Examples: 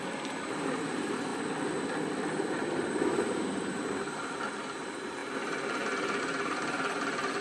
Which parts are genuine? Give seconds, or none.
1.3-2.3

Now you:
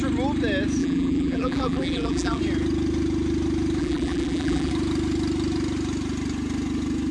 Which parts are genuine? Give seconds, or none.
0.0-0.8; 2.4-3.8; 4.7-7.1

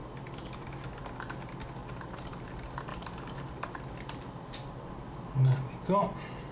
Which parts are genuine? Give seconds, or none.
0.0-1.8; 2.5-2.9

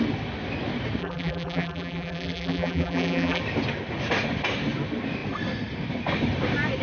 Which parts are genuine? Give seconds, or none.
0.0-1.0; 3.4-6.8

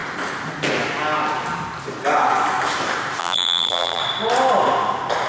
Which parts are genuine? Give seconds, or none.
0.0-3.2; 4.0-5.3

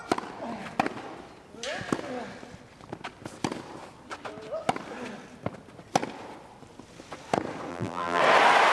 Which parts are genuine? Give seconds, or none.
0.0-7.7; 8.2-8.7

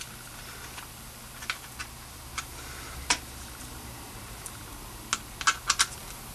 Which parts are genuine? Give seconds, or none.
0.0-1.8; 4.6-6.3